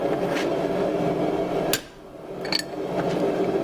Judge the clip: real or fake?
real